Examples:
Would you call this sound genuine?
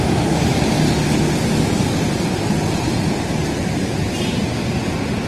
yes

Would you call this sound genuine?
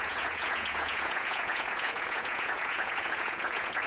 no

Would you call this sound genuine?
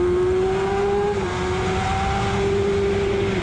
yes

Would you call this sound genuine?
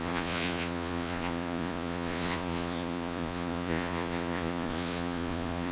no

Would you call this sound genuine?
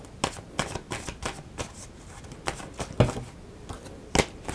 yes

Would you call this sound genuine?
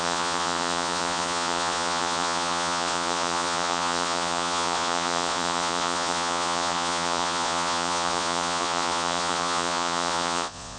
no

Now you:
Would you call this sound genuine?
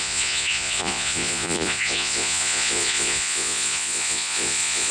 no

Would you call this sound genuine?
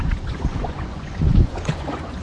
no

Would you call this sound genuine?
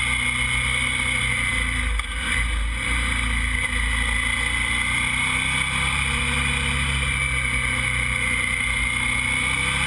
yes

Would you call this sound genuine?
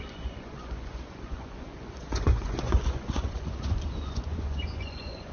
no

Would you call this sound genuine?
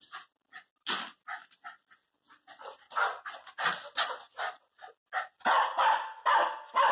yes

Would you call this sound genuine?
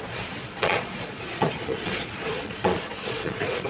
no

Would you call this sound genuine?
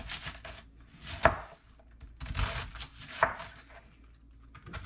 yes